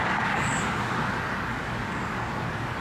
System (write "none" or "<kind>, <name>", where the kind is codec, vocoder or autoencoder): codec, DAC